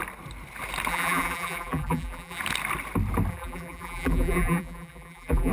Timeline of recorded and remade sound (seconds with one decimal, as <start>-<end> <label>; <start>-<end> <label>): 0.0-0.9 recorded; 0.9-2.4 remade; 2.4-3.3 recorded; 3.3-5.5 remade